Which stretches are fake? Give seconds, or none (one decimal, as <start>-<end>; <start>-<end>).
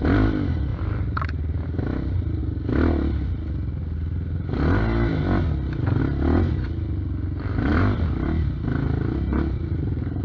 0.7-1.2; 7.7-10.2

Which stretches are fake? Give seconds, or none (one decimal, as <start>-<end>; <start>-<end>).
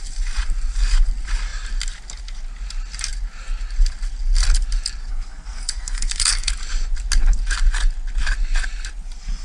5.0-6.5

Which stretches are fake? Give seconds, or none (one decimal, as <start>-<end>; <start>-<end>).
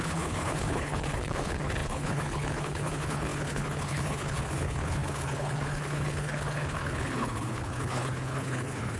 0.0-9.0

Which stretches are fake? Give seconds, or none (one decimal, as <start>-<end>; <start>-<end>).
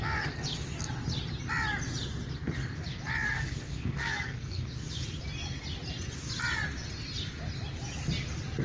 3.3-4.6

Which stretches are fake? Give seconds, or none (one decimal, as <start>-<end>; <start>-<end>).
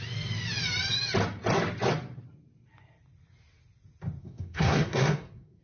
4.2-5.6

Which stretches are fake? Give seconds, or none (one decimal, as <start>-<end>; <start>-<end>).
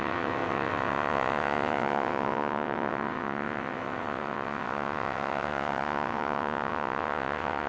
0.0-7.7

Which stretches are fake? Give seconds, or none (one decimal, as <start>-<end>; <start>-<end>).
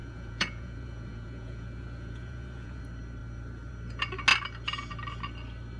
0.0-2.8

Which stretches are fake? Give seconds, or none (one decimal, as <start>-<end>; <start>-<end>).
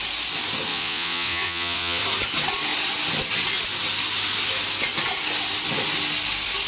0.7-2.0